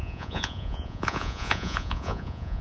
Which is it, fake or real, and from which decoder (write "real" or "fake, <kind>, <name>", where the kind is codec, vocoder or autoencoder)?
fake, vocoder, Vocos